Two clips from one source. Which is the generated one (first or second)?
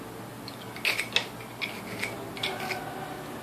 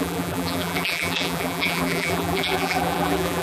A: second